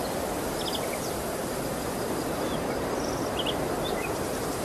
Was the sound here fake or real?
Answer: real